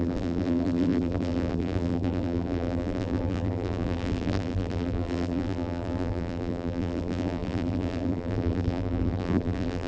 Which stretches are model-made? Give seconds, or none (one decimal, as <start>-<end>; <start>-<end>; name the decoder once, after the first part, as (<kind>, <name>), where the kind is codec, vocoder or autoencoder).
0.0-9.9 (vocoder, BigVGAN v2)